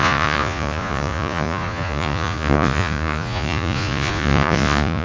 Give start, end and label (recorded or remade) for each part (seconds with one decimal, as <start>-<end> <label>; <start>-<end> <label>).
0.0-5.0 remade